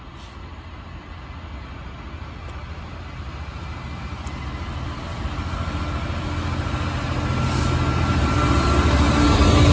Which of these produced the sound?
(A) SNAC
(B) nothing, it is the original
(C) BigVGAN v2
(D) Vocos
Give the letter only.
B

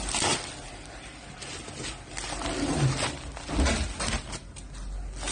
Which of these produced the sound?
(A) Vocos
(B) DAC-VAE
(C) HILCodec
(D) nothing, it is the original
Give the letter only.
D